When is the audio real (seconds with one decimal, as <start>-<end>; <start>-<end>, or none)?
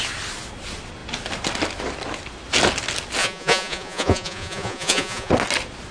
0.0-3.2; 5.3-5.9